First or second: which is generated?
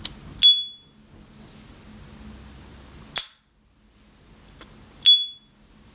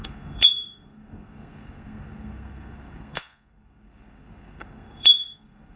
second